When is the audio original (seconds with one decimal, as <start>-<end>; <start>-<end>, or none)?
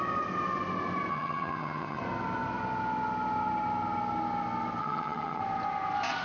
0.0-1.1; 2.0-4.8; 5.4-6.2